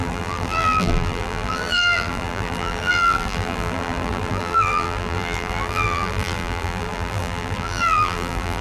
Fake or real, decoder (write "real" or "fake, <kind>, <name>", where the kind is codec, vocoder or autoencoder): fake, vocoder, BigVGAN v2